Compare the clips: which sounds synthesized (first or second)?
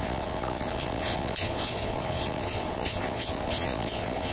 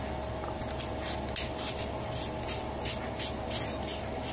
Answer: first